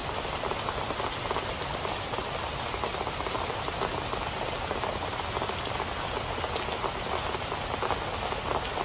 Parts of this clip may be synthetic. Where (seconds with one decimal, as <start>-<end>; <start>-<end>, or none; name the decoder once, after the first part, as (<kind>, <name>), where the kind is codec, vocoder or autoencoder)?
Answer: none